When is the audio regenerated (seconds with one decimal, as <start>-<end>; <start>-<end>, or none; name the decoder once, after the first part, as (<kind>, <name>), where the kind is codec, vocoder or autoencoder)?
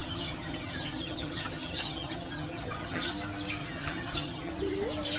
0.0-3.1 (vocoder, HiFi-GAN); 3.6-4.5